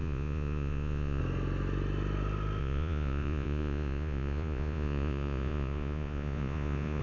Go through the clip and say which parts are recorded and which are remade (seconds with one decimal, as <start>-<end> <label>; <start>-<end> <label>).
0.0-1.2 remade; 1.2-2.6 recorded; 2.6-7.0 remade